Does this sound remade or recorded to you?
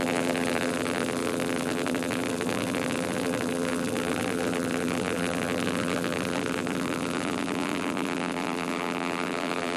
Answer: remade